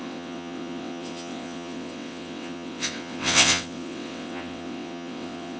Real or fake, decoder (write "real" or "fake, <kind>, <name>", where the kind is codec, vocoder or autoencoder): fake, vocoder, WaveNeXt